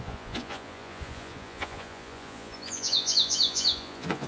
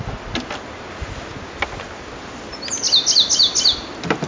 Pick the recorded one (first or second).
second